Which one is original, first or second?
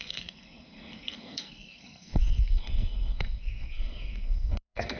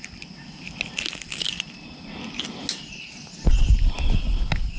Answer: second